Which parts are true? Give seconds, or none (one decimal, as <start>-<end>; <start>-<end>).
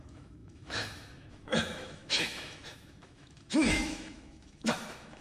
none